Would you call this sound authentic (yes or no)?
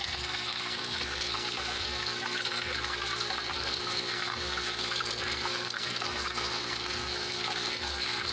no